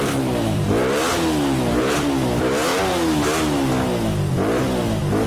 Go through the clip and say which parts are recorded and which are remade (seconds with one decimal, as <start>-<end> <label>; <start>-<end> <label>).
0.0-0.8 remade; 0.8-1.8 recorded; 1.8-2.7 remade; 2.7-5.3 recorded